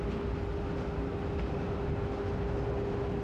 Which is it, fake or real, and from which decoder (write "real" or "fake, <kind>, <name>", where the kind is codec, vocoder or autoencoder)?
real